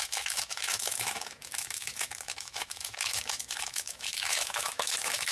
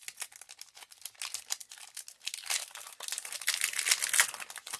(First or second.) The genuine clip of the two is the second